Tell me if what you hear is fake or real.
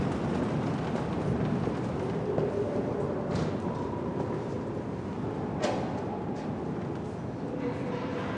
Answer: real